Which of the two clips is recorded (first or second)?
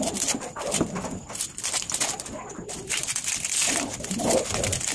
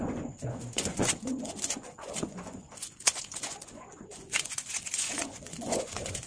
first